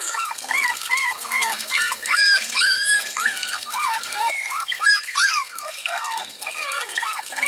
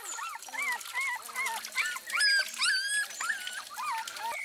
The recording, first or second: second